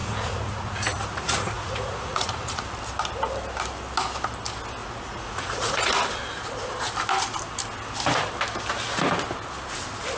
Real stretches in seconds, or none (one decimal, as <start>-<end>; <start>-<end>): 2.6-4.8; 5.9-10.2